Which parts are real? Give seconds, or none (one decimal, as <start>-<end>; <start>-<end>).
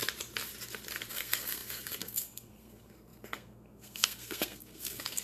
0.0-1.1